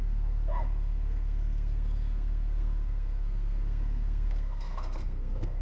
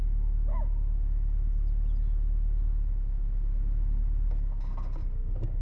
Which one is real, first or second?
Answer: second